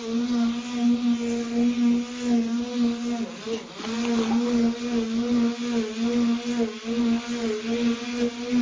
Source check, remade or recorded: recorded